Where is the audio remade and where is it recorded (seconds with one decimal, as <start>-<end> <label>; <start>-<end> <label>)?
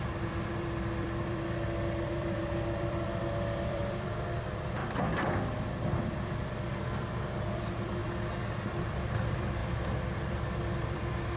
0.0-8.0 remade; 8.0-8.6 recorded; 8.6-11.4 remade